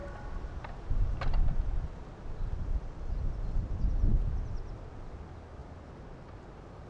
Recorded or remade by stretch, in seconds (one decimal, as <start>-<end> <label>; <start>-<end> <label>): 0.0-4.1 remade; 4.1-5.6 recorded; 5.6-6.3 remade; 6.3-6.9 recorded